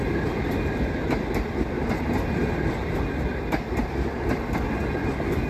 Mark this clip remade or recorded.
recorded